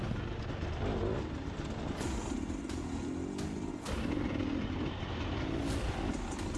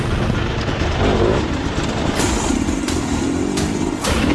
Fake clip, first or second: second